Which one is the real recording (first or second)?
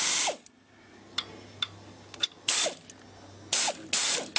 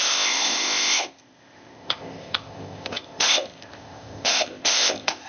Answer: first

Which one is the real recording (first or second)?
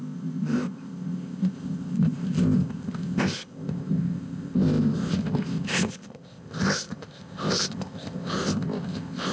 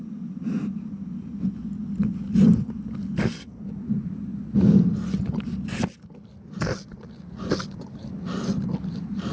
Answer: second